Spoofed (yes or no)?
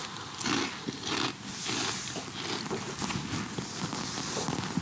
no